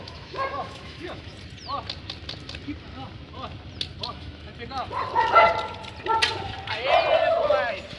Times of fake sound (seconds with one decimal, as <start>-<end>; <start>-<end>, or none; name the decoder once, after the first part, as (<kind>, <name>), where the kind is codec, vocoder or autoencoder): 0.0-1.3 (autoencoder, DAC-VAE); 4.1-4.5